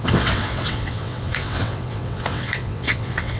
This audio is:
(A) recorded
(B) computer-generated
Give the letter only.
B